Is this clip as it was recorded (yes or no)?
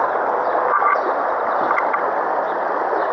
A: yes